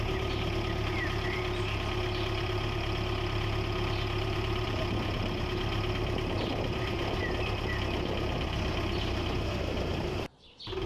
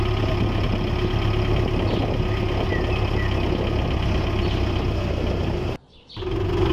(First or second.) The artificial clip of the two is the first